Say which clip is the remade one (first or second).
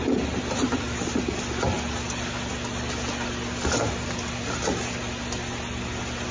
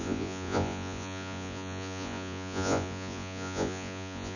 second